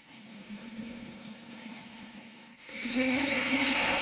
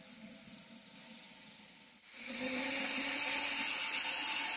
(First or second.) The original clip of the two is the second